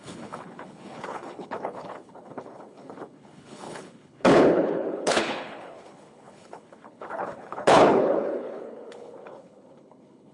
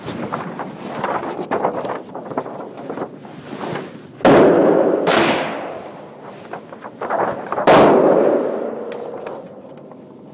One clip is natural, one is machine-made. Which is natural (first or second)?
second